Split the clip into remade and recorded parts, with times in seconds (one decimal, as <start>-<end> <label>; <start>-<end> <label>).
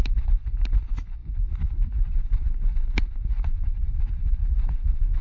0.0-5.2 recorded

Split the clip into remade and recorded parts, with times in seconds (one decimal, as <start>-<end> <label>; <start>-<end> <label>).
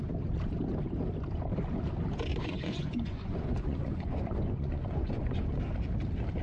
0.0-2.3 recorded; 2.3-5.6 remade; 5.6-6.4 recorded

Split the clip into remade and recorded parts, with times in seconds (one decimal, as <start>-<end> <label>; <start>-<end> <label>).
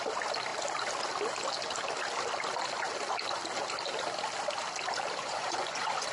0.0-5.2 recorded; 5.2-6.1 remade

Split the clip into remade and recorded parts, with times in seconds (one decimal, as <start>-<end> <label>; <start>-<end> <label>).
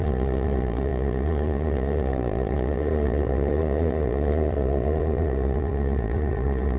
0.0-6.8 remade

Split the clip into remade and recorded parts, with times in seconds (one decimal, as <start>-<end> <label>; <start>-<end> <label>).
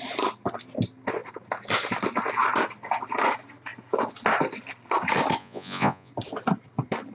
0.0-5.4 recorded; 5.4-6.1 remade; 6.1-7.1 recorded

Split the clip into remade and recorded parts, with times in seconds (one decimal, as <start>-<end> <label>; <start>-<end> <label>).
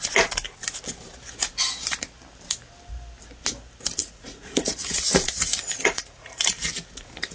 0.0-4.0 recorded; 4.0-6.7 remade; 6.7-7.3 recorded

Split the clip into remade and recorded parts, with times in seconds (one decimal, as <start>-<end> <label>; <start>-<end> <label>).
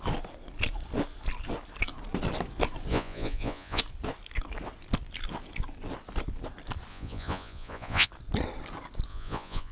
0.0-2.9 recorded; 2.9-3.8 remade; 3.8-6.9 recorded; 6.9-8.1 remade; 8.1-9.1 recorded; 9.1-9.7 remade